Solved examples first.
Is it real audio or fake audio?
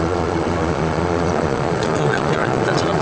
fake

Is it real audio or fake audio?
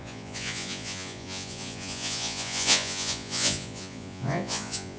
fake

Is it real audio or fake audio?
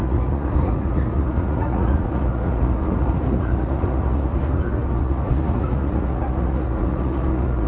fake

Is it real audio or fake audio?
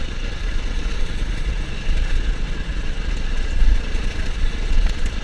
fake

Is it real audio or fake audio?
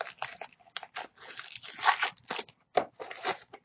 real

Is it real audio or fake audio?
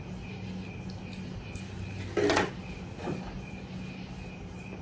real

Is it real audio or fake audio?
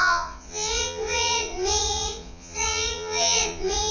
fake